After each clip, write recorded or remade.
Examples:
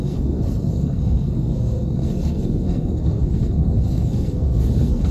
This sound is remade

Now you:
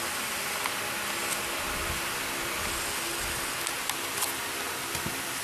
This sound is recorded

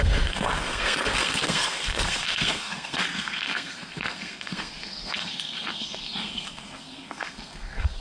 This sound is remade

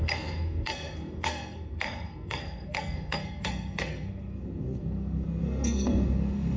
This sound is remade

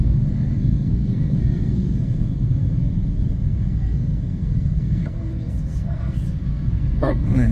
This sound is remade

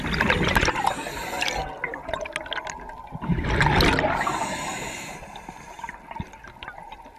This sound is recorded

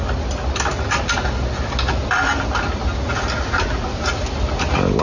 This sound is recorded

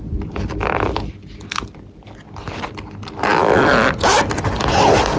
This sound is recorded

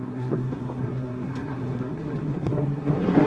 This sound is remade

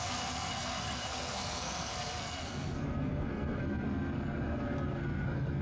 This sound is remade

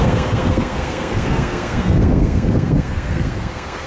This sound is remade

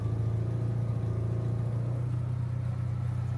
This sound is recorded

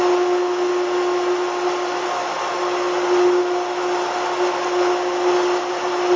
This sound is recorded